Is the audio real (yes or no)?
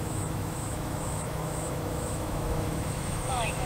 no